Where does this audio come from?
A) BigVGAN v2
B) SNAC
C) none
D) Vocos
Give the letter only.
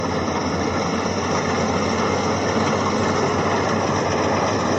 C